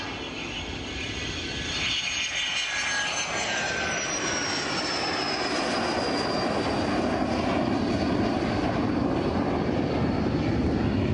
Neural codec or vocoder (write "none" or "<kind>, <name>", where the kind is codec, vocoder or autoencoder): none